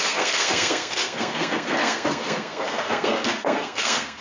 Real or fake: fake